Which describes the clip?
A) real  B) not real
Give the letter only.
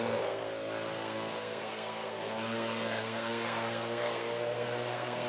B